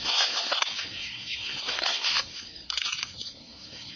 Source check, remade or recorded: remade